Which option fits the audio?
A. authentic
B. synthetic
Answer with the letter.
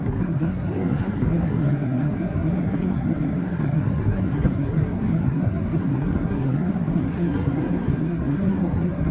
B